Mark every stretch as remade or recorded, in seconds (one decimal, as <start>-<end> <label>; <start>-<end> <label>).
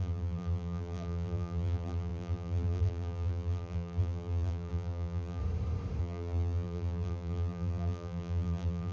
0.0-5.4 remade; 5.4-6.0 recorded; 6.0-8.9 remade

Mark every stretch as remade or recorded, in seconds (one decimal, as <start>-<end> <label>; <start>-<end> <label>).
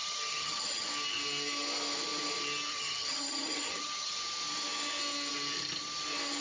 0.0-0.9 remade; 0.9-2.7 recorded; 2.7-4.2 remade; 4.2-6.4 recorded